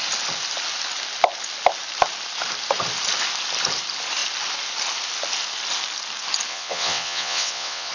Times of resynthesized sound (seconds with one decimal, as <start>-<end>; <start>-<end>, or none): 6.5-7.9

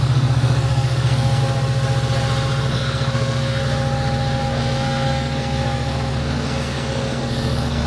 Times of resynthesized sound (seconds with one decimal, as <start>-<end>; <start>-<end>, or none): 0.0-1.4; 2.7-3.6; 4.4-7.9

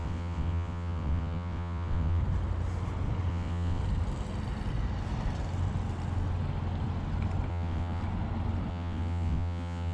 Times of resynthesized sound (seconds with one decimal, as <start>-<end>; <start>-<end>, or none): 0.0-2.2; 3.3-3.8; 7.5-8.0; 8.7-9.9

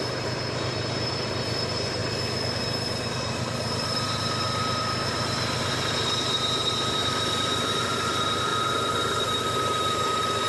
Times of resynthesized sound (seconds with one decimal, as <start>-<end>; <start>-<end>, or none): 0.0-2.0; 2.6-10.5

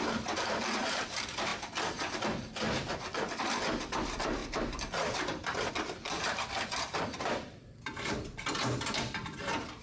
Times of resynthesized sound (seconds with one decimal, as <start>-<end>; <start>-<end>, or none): 0.0-9.8

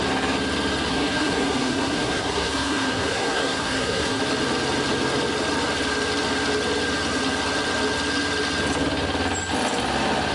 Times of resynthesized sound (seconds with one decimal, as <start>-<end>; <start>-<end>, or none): 0.9-4.2

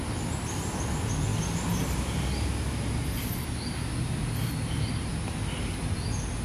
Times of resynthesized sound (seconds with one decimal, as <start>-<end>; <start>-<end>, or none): none